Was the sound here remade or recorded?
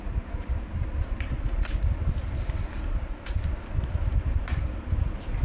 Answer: recorded